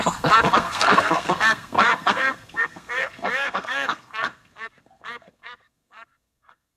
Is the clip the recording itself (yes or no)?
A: no